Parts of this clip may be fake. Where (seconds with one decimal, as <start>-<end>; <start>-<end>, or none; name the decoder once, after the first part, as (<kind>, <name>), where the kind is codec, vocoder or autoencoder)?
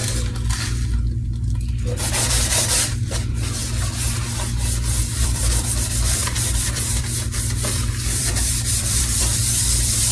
2.3-3.6 (vocoder, BigVGAN v2); 5.2-10.1